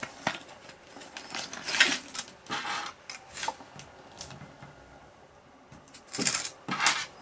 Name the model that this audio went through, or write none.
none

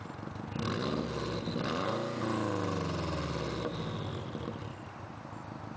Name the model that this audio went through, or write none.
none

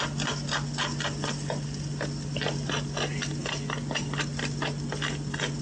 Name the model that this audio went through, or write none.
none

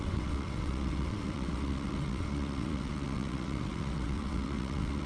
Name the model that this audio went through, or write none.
vocoder, WaveNeXt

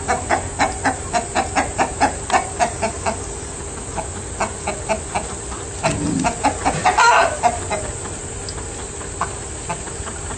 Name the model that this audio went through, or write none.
none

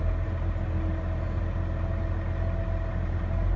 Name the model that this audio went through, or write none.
none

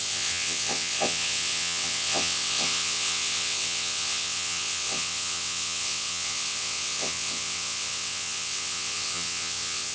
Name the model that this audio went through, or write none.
vocoder, WaveNeXt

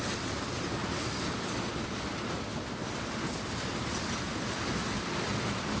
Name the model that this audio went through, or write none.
none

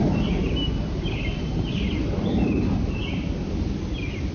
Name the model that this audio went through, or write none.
none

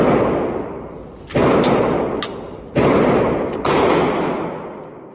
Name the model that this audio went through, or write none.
none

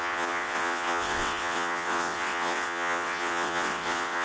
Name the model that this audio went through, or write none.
vocoder, WaveNeXt